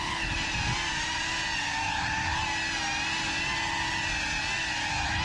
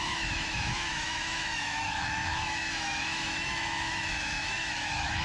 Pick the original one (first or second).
first